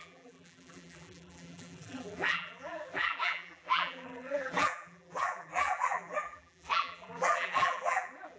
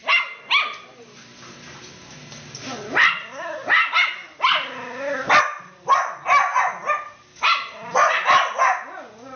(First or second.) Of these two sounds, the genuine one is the second